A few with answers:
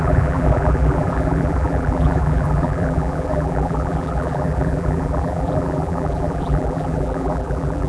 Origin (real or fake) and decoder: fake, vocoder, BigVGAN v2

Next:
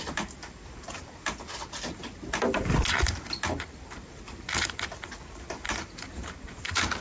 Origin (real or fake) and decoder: real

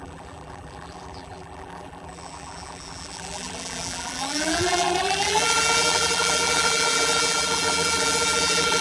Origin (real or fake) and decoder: fake, vocoder, BigVGAN v2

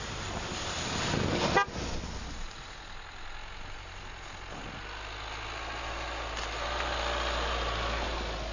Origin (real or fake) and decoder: real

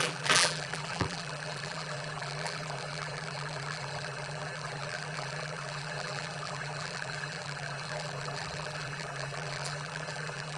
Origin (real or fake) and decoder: fake, vocoder, BigVGAN v2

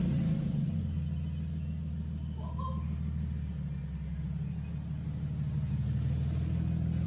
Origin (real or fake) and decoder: real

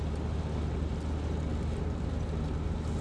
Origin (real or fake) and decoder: real